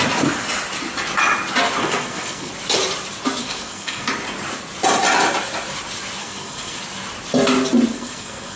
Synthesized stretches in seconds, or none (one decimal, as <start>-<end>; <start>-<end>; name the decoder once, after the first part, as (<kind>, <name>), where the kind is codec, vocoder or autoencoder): 1.8-2.5 (codec, SNAC); 3.4-4.1; 6.2-6.8; 7.9-8.6